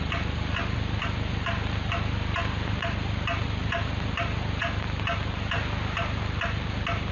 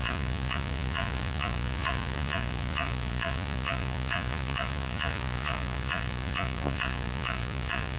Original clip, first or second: first